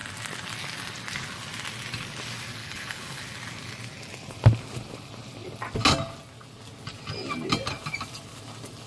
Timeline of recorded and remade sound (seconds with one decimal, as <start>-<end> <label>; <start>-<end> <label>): 0.0-2.6 recorded; 2.6-3.2 remade; 3.2-8.9 recorded